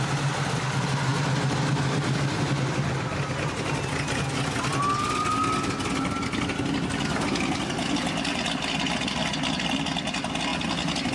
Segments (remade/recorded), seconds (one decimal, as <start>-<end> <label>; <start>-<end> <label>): 0.0-11.1 recorded